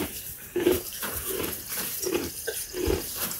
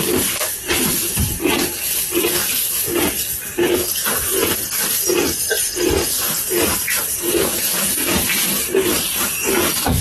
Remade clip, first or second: first